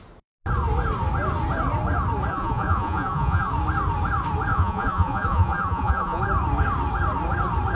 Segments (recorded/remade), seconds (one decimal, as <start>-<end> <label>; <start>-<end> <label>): 0.0-2.3 recorded; 2.3-3.5 remade; 3.5-4.5 recorded; 4.5-6.2 remade; 6.2-7.7 recorded